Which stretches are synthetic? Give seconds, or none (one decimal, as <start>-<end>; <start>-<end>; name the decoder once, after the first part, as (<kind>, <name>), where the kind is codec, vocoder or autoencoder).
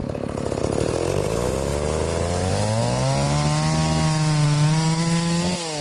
none